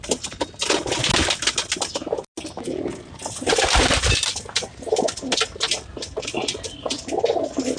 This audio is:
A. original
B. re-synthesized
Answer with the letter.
A